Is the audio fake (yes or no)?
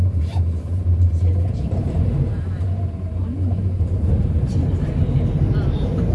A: yes